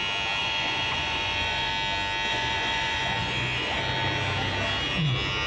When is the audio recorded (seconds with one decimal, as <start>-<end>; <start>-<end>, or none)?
0.0-0.4; 1.7-2.3; 3.8-5.5